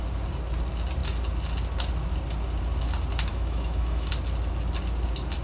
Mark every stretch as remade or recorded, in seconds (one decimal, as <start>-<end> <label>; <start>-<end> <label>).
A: 0.0-3.3 recorded; 3.3-4.1 remade; 4.1-5.4 recorded